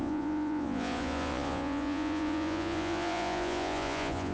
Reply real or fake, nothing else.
fake